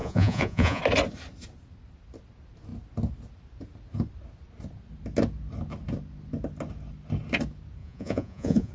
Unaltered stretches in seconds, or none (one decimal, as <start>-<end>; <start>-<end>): 0.8-7.8

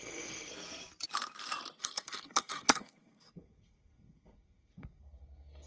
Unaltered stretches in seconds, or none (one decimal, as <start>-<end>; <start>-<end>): 0.5-1.8